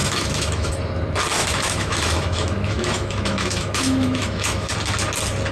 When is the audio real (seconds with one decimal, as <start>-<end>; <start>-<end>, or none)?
0.7-1.4; 4.7-5.5